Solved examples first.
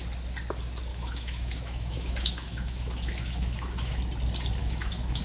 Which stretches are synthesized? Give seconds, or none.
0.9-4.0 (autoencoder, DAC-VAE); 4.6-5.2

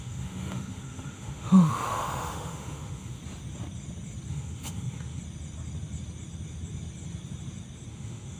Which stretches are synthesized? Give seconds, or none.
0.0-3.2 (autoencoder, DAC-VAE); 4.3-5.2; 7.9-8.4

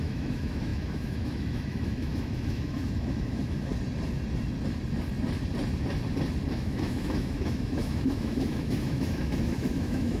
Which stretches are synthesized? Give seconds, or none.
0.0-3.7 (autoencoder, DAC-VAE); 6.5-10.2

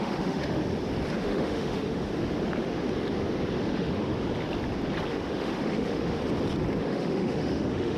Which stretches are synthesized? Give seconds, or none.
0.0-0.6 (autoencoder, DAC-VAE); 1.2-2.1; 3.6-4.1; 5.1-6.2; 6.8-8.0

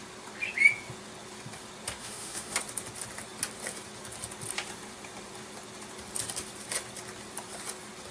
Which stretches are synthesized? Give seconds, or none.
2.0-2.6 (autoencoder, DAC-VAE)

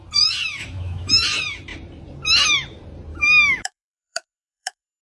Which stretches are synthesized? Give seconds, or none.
0.6-1.1 (autoencoder, DAC-VAE); 3.1-5.0

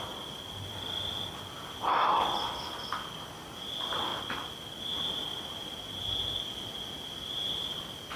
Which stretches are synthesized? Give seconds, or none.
none

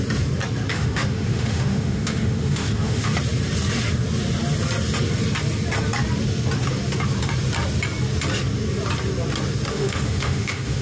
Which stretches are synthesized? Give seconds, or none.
0.7-3.1 (autoencoder, DAC-VAE); 9.7-10.8